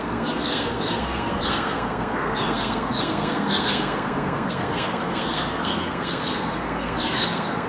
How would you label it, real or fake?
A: fake